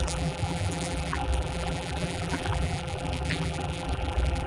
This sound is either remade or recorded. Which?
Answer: remade